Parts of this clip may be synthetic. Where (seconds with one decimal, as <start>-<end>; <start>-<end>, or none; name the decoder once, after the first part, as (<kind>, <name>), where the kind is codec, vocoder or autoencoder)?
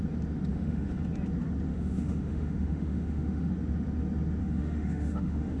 0.5-1.0 (autoencoder, DAC-VAE); 1.7-3.5; 4.4-5.6